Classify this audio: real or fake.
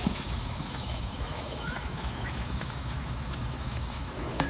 fake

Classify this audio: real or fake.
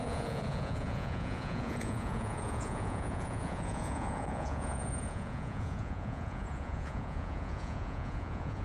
fake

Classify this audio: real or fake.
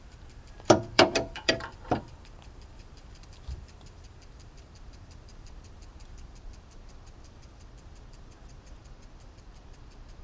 fake